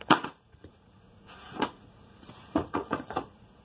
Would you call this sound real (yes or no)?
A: no